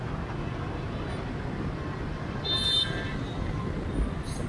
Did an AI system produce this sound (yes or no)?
no